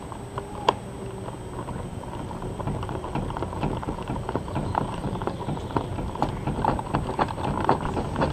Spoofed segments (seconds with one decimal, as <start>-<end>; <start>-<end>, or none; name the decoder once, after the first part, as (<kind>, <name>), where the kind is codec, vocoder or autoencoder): 1.9-6.6 (vocoder, BigVGAN v2)